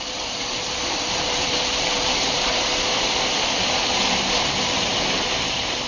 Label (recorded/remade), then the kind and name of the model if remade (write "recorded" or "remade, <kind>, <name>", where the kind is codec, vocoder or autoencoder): remade, vocoder, BigVGAN v2